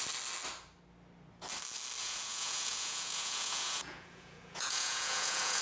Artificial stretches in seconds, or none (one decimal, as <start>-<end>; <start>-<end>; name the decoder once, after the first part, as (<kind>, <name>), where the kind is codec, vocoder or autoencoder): 2.0-5.6 (vocoder, Vocos)